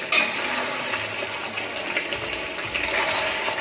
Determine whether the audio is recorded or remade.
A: recorded